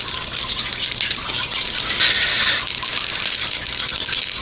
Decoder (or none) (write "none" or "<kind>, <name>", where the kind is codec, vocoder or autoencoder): none